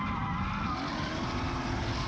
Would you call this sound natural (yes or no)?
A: yes